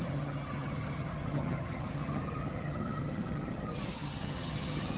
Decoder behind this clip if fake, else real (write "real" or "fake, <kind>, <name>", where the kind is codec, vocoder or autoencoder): fake, vocoder, HiFi-GAN